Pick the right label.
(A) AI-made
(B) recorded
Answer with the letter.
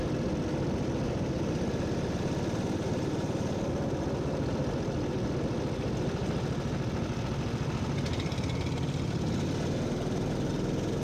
B